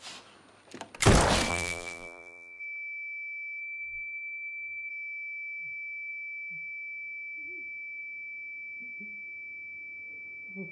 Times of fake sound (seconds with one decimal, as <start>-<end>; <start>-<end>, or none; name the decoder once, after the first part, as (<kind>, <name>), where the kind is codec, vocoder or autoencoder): 1.5-2.6 (vocoder, BigVGAN v2); 3.6-4.9